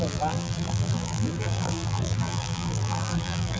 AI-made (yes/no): yes